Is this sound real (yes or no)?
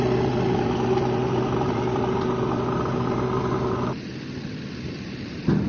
yes